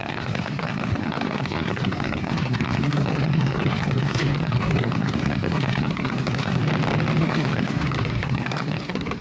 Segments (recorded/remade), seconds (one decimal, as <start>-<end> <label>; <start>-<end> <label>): 0.0-6.6 remade; 6.6-7.2 recorded; 7.2-9.2 remade